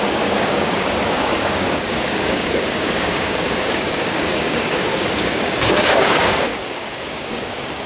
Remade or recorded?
remade